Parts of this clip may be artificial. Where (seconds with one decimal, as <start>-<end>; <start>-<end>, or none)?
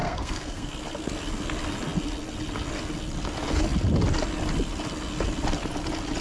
0.0-0.7